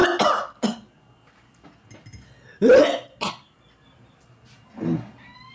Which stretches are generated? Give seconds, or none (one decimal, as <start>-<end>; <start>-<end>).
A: none